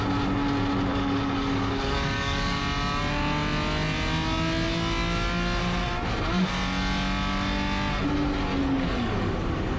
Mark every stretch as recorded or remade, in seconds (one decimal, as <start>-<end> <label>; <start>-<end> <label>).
0.0-0.9 recorded; 0.9-2.6 remade; 2.6-8.6 recorded; 8.6-9.8 remade